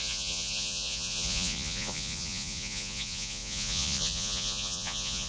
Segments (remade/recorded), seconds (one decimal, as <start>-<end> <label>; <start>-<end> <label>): 0.0-5.3 remade